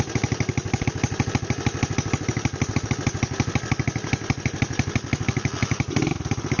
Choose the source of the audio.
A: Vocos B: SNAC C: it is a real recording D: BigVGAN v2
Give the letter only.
C